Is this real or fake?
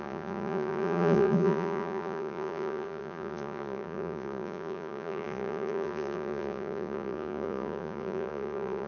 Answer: fake